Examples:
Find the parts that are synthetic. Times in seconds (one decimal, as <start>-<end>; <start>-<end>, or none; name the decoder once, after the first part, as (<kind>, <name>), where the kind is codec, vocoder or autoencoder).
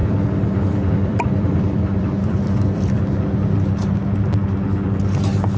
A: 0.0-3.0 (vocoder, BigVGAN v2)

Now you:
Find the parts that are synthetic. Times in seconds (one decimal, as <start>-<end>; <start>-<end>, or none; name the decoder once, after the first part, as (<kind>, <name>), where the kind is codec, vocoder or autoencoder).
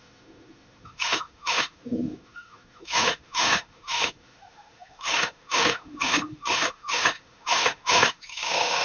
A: 0.0-8.8 (autoencoder, DAC-VAE)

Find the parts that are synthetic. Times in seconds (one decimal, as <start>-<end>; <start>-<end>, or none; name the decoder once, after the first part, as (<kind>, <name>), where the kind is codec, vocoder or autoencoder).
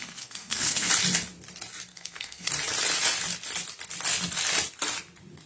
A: 0.0-0.9 (codec, SNAC); 1.9-2.5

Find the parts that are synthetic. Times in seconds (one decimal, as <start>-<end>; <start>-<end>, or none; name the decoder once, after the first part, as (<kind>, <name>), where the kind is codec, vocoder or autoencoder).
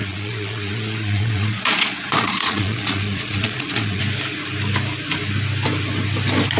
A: 0.0-4.0 (vocoder, Vocos)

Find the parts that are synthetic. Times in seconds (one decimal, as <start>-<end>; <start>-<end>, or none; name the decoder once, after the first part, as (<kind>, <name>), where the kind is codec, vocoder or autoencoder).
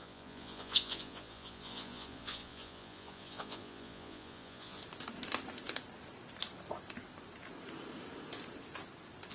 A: 0.0-4.8 (vocoder, Vocos)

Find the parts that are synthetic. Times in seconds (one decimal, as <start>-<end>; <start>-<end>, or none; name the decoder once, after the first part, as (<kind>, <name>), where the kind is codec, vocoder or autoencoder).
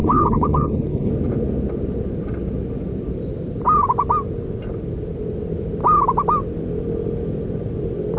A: 0.0-1.1 (codec, HILCodec)